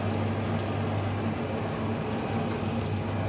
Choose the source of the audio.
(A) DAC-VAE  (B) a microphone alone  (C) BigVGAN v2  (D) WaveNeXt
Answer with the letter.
B